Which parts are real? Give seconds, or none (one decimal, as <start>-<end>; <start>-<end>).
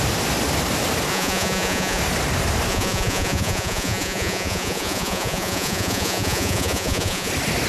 0.0-1.1; 2.0-2.7; 7.3-7.7